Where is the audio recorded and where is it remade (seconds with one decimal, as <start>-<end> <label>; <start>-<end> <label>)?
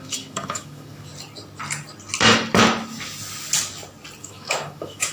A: 0.0-1.1 remade; 1.1-4.2 recorded; 4.2-5.1 remade